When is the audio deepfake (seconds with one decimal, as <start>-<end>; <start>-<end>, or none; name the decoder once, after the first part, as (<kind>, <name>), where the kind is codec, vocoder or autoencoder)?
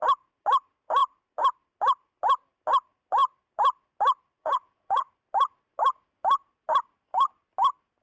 4.4-5.1 (vocoder, Vocos)